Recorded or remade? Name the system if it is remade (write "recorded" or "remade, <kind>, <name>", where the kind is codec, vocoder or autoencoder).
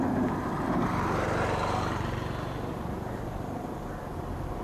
recorded